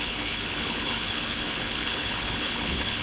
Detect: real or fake fake